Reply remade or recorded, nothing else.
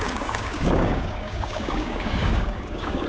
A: remade